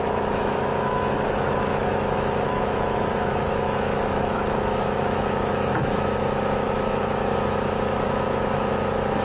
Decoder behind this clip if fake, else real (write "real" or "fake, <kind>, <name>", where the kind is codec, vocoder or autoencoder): fake, autoencoder, DAC-VAE